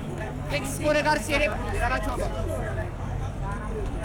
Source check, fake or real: fake